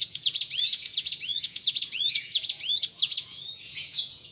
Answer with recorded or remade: remade